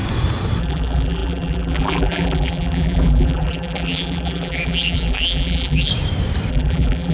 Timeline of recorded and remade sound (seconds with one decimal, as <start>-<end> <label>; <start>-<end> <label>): 0.0-0.6 recorded; 0.6-5.9 remade; 5.9-6.5 recorded; 6.5-7.1 remade